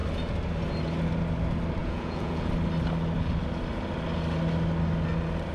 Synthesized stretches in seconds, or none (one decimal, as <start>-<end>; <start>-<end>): 1.8-2.5